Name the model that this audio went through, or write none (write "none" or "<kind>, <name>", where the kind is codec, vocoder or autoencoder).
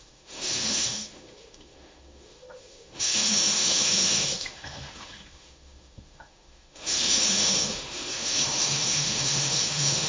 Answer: autoencoder, DAC-VAE